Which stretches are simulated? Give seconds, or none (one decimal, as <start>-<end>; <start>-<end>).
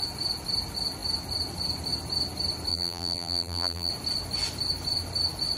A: 2.7-3.9